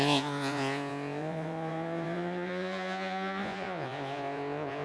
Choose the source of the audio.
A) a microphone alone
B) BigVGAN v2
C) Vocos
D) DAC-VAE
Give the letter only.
C